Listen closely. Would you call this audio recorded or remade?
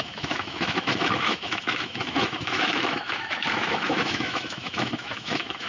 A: remade